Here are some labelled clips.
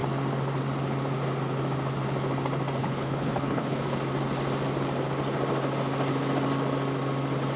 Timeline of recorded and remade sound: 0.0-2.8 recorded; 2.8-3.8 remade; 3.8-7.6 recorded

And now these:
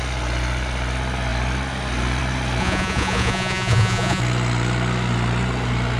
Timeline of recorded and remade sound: 0.0-2.6 recorded; 2.6-4.2 remade; 4.2-6.0 recorded

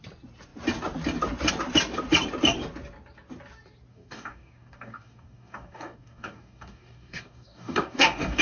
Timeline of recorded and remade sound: 0.0-3.9 recorded; 3.9-8.4 remade